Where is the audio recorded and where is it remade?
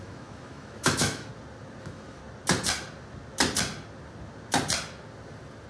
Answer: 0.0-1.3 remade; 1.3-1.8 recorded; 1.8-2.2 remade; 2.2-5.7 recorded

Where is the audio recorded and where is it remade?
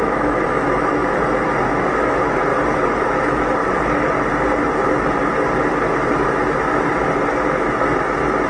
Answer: 0.0-1.0 remade; 1.0-1.7 recorded; 1.7-2.5 remade; 2.5-3.1 recorded; 3.1-3.6 remade; 3.6-8.5 recorded